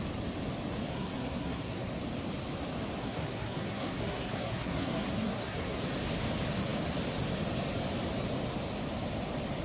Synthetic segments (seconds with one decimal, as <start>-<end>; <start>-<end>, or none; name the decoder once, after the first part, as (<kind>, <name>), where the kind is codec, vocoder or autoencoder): 0.9-1.9 (codec, SNAC); 3.0-5.8